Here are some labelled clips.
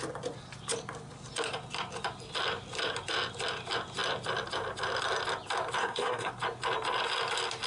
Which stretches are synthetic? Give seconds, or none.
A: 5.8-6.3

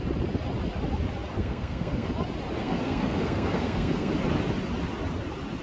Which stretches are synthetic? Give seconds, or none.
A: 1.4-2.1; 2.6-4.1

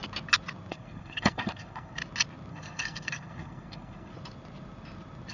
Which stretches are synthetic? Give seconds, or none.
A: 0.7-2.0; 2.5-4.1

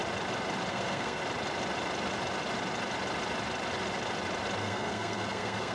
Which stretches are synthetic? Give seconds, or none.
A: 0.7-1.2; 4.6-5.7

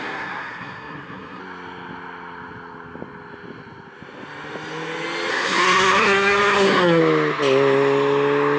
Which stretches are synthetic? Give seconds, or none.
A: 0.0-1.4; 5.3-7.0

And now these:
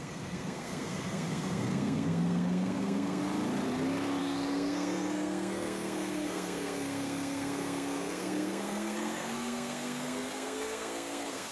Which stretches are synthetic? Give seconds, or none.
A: 0.0-3.2; 4.2-11.5

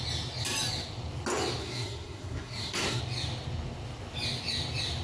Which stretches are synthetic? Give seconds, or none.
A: 1.6-3.0